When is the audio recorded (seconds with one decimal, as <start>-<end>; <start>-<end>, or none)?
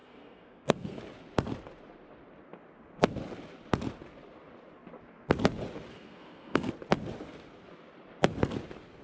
1.0-5.9; 6.7-9.0